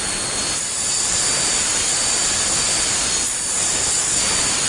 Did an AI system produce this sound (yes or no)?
no